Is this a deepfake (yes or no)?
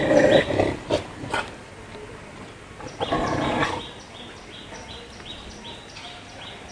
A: no